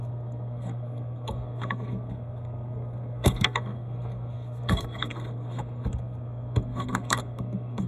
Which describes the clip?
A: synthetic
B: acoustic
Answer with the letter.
A